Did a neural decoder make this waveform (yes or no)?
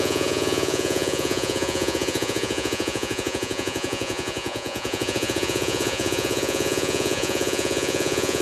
yes